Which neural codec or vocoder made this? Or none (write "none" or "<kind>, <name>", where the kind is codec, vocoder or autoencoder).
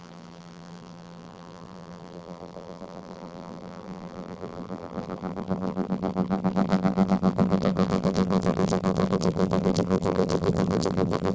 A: vocoder, BigVGAN v2